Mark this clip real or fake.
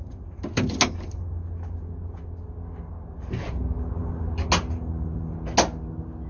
real